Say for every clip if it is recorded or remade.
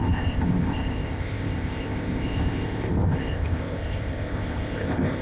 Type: remade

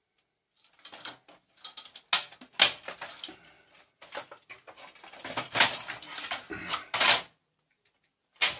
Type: recorded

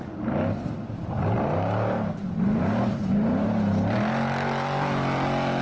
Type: recorded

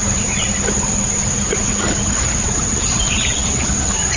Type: recorded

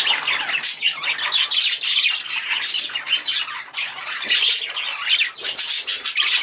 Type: recorded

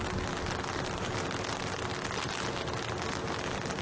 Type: recorded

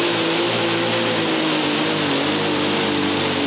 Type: recorded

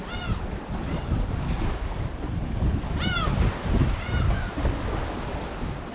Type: recorded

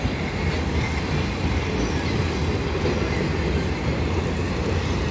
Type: recorded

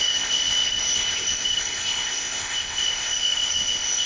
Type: remade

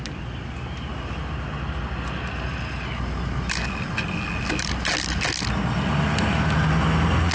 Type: recorded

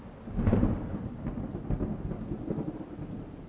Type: recorded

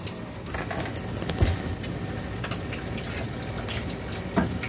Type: recorded